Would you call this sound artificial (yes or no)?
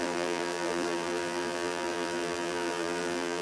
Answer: yes